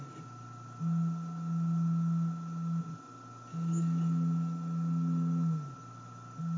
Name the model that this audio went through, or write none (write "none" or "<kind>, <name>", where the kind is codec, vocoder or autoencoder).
none